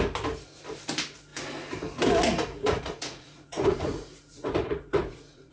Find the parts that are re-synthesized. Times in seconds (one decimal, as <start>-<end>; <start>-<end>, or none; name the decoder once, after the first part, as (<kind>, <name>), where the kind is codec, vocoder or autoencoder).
2.5-5.5 (vocoder, Vocos)

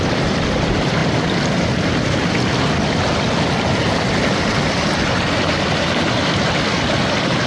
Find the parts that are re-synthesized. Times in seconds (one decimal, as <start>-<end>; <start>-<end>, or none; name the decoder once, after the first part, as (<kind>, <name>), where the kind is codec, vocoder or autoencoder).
none

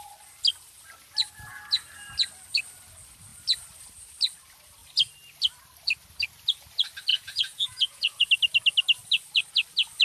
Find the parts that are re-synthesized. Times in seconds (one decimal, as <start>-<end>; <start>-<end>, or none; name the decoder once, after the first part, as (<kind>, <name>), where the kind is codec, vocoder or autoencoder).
7.1-8.3 (vocoder, Vocos)

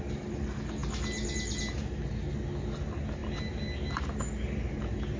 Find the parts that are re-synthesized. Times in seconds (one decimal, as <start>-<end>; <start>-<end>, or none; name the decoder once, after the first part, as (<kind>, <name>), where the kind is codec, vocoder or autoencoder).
none

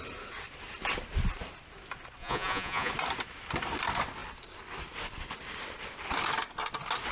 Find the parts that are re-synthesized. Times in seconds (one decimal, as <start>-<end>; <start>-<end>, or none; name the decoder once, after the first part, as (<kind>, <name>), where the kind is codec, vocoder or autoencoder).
2.2-2.9 (vocoder, Vocos)

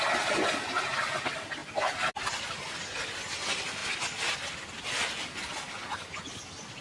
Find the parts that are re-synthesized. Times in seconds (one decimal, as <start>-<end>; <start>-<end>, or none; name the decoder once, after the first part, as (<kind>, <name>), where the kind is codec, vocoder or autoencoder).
none